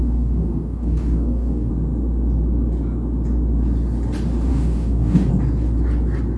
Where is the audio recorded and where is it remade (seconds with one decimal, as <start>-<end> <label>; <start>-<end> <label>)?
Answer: 0.0-1.7 remade; 1.7-4.5 recorded; 4.5-5.3 remade; 5.3-6.4 recorded